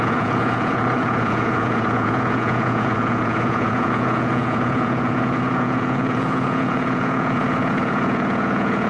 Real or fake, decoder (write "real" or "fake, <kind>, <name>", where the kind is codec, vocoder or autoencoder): fake, vocoder, Vocos